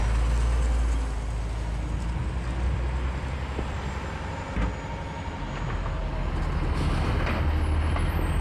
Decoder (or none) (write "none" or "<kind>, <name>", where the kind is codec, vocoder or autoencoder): none